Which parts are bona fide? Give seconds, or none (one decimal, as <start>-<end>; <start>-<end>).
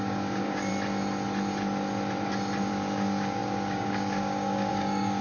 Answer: 0.7-2.7